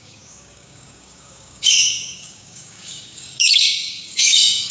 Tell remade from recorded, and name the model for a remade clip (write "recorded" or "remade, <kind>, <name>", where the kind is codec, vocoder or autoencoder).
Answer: remade, codec, DAC